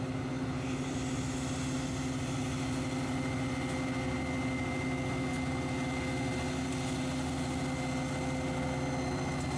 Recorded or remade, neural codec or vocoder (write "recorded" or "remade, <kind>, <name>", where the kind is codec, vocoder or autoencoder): recorded